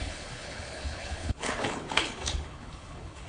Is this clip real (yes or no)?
no